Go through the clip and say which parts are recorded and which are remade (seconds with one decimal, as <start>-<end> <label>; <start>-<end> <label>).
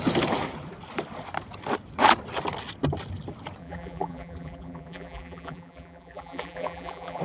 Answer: 0.0-3.6 recorded; 3.6-7.2 remade